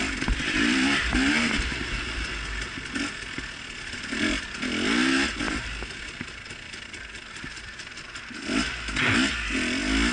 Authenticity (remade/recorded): recorded